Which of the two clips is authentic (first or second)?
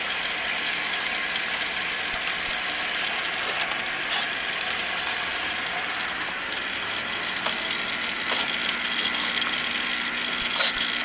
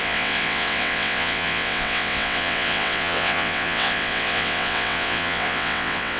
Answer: first